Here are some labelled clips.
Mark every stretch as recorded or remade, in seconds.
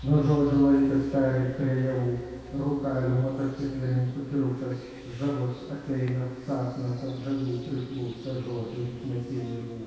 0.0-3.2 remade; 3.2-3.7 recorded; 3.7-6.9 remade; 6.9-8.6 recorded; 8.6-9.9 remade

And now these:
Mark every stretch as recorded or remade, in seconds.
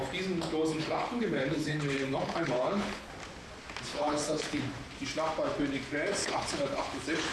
0.0-0.7 recorded; 0.7-3.1 remade; 3.1-3.9 recorded; 3.9-4.6 remade; 4.6-6.2 recorded; 6.2-7.3 remade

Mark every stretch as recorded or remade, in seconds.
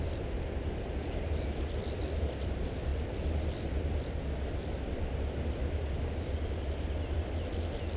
0.0-8.0 recorded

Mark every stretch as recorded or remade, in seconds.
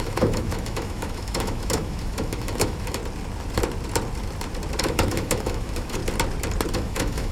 0.0-3.0 remade; 3.0-4.8 recorded; 4.8-6.0 remade; 6.0-6.7 recorded; 6.7-7.3 remade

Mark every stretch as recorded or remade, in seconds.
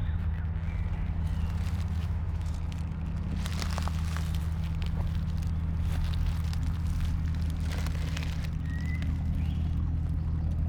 0.0-2.0 recorded; 2.0-2.5 remade; 2.5-10.7 recorded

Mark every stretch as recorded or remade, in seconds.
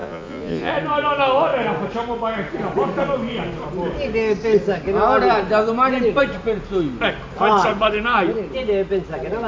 0.0-0.7 remade; 0.7-9.5 recorded